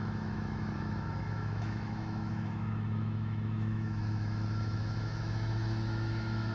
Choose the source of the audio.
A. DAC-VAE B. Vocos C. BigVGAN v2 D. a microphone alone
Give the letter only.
A